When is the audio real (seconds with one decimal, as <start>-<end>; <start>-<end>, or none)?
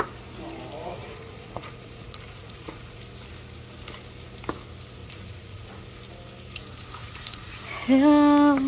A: 0.0-1.0; 3.0-5.0; 5.7-7.0; 7.6-8.7